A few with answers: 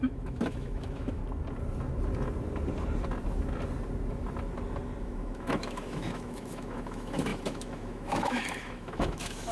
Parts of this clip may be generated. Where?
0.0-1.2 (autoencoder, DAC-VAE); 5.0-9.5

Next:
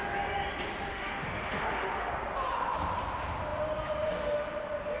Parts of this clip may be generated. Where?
0.9-2.1 (autoencoder, DAC-VAE)

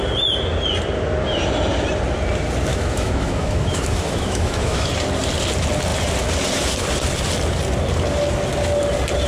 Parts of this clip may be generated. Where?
2.7-4.9 (autoencoder, DAC-VAE)

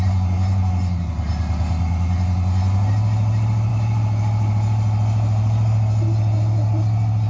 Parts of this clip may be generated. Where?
none

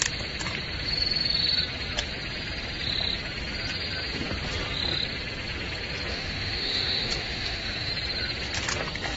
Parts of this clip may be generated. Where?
6.1-7.9 (autoencoder, DAC-VAE)

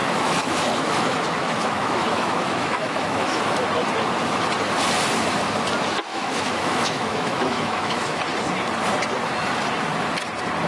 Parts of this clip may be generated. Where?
0.0-3.4 (autoencoder, DAC-VAE); 6.1-8.2

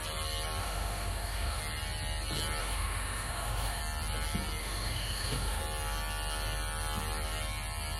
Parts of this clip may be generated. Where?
0.6-1.6 (autoencoder, DAC-VAE); 2.6-3.8; 4.6-5.6